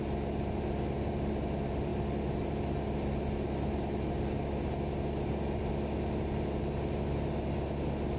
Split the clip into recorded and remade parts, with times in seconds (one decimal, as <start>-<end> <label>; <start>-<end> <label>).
0.0-8.2 recorded